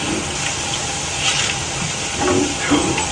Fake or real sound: fake